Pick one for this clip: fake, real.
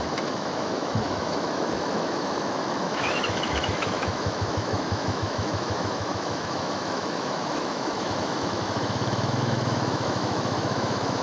fake